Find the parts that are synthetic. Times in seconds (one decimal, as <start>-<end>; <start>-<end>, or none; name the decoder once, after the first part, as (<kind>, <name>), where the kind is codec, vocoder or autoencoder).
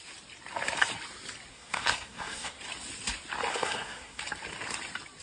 1.5-2.6 (codec, SNAC); 3.5-4.2